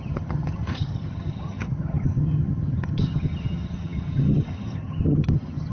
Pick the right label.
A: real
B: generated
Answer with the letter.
B